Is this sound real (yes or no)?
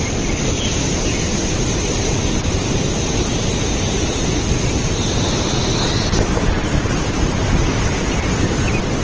yes